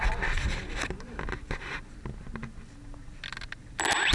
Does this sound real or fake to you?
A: real